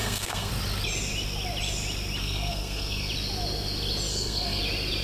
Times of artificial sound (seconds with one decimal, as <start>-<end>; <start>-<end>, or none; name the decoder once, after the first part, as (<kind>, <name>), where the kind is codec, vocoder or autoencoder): 0.0-0.5 (codec, SNAC); 2.2-3.1; 4.1-4.6